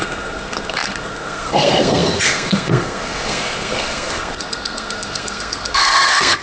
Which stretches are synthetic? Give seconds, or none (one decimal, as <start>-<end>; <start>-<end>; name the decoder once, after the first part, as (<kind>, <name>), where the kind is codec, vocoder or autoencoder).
0.0-6.4 (codec, SNAC)